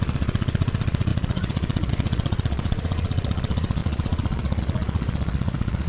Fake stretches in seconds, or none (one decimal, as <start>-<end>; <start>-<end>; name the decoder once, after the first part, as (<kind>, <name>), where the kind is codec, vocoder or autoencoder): 0.0-5.9 (vocoder, Vocos)